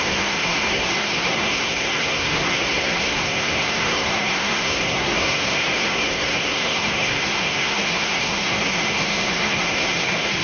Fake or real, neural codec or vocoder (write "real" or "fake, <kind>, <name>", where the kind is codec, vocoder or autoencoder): fake, codec, SNAC